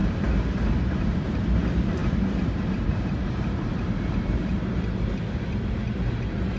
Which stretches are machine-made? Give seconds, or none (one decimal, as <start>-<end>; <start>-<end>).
0.0-1.4; 2.0-5.1

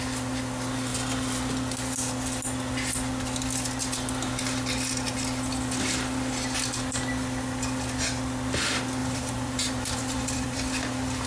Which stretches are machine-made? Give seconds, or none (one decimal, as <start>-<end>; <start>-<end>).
9.0-10.6

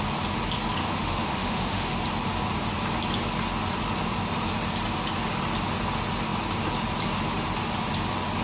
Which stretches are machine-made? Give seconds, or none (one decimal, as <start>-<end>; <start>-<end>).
0.8-1.9